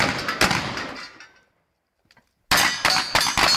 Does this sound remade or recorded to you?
recorded